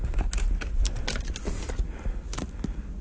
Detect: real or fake real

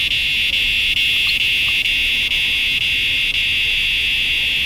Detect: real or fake real